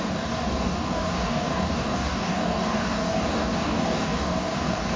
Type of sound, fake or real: fake